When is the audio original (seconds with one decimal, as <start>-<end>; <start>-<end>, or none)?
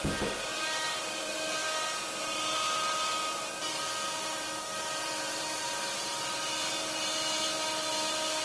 1.6-2.2